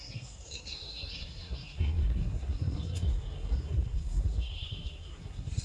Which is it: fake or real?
fake